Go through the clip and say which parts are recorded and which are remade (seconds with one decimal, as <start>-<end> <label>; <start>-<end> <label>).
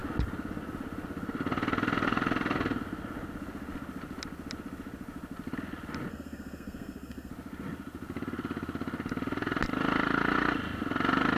0.0-6.1 recorded; 6.1-7.3 remade; 7.3-11.4 recorded